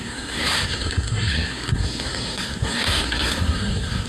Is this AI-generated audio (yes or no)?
yes